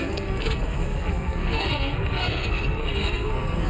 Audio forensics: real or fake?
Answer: fake